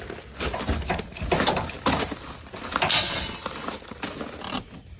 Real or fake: real